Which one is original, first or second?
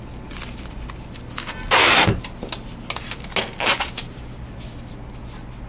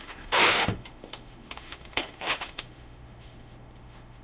first